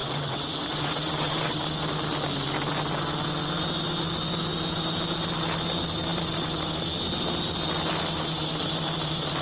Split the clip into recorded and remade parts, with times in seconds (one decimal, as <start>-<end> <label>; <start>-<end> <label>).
0.0-1.6 remade; 1.6-9.4 recorded